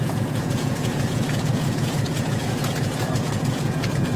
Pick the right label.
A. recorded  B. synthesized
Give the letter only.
B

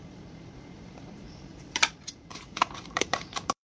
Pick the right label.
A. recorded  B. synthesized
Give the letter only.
B